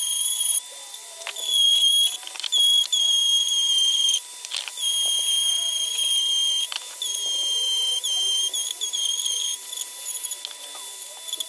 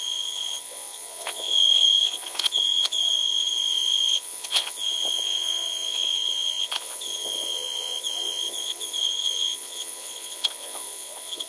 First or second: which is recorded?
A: first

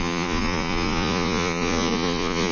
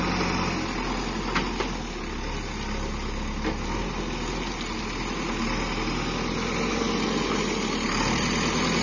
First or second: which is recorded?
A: second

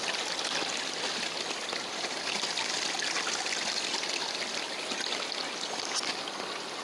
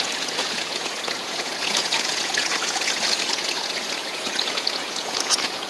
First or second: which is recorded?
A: first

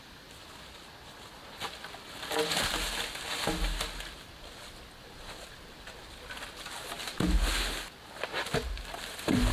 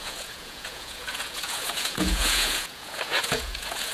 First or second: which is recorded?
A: first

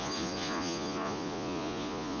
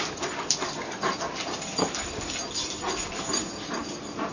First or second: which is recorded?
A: second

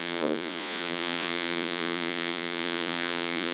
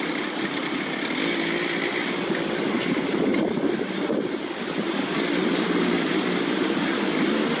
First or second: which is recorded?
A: second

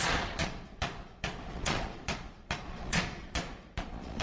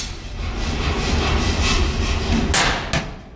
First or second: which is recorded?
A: second